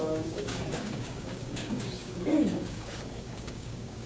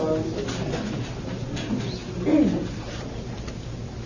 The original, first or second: second